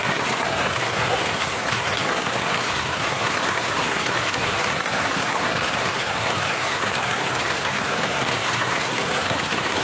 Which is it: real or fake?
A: fake